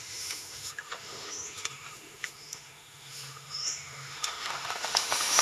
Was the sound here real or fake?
fake